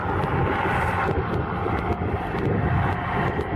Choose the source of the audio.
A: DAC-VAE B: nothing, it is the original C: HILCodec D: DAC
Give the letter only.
B